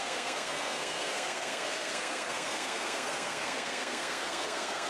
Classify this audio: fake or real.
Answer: fake